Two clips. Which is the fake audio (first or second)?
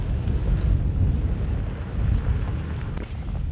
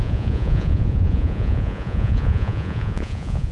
second